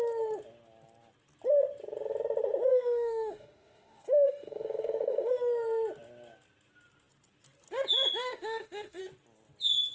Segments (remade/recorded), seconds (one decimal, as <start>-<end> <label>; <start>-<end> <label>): 0.0-2.7 recorded; 2.7-5.3 remade; 5.3-8.2 recorded; 8.2-9.0 remade; 9.0-9.9 recorded